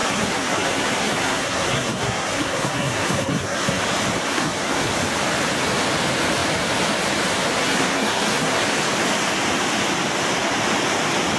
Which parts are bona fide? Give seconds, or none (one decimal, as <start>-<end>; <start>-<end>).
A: 3.8-4.3; 4.9-7.6; 8.6-11.4